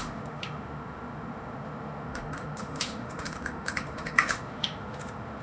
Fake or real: fake